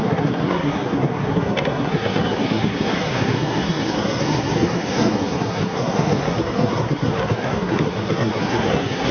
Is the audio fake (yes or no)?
yes